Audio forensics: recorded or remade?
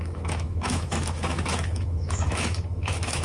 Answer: remade